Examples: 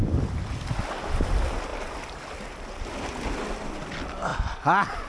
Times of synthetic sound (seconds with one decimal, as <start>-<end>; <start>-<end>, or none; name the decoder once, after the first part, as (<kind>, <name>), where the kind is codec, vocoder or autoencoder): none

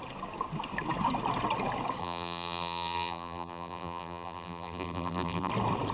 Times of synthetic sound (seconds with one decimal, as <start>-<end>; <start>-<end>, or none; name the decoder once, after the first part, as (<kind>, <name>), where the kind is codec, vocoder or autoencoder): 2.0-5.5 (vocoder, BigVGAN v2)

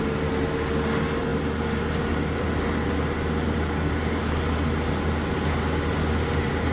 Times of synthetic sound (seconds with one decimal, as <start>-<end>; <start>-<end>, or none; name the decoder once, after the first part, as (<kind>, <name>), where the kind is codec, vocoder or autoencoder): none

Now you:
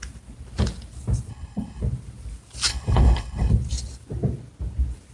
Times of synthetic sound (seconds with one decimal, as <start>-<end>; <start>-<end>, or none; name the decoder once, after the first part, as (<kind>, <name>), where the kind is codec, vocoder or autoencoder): 1.3-1.8 (codec, HILCodec); 2.7-3.5

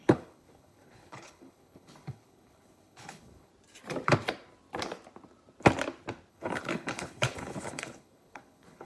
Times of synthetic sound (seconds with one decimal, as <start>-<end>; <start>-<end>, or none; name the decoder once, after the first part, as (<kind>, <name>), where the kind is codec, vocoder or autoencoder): 0.0-3.5 (codec, HILCodec); 6.3-8.9

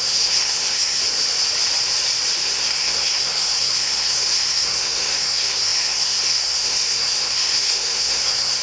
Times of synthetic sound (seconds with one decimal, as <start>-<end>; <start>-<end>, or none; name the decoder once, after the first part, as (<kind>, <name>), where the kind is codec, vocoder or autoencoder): 0.0-1.0 (codec, SNAC); 2.4-8.6

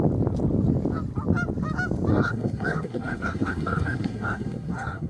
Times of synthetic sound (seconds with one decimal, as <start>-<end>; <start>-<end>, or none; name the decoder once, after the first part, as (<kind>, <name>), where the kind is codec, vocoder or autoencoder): 2.1-5.1 (codec, SNAC)